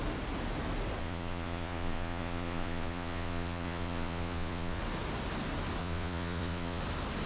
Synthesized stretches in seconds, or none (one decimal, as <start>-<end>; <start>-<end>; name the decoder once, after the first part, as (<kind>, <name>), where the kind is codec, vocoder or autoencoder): 1.0-4.8 (vocoder, Vocos); 5.8-6.8